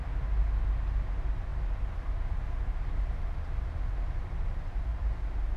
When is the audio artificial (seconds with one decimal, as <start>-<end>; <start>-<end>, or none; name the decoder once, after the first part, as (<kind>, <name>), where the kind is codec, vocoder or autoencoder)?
none